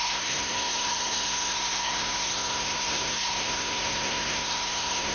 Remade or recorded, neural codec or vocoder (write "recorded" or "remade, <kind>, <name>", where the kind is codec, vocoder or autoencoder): remade, codec, SNAC